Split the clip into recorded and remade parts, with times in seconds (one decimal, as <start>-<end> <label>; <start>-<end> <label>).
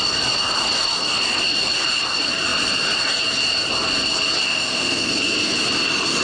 0.0-4.5 recorded; 4.5-5.1 remade; 5.1-6.2 recorded